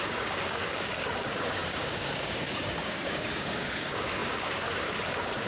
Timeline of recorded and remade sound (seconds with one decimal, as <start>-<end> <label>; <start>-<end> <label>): 0.0-5.5 remade